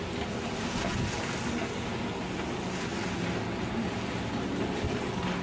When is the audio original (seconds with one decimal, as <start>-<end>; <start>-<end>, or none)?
0.0-5.4